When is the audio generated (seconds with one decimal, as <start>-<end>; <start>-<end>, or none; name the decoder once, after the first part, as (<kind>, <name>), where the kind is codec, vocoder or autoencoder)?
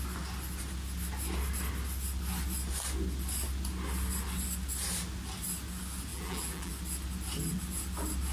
6.1-6.7 (vocoder, BigVGAN v2)